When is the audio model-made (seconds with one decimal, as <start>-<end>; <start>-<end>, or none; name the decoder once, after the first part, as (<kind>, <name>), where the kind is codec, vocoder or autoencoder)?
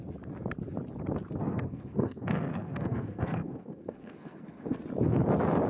1.4-4.8 (codec, SNAC)